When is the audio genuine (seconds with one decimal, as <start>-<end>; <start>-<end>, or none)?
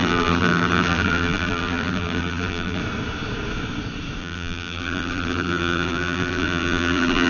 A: 2.8-4.2